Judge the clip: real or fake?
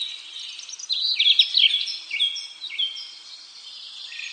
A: real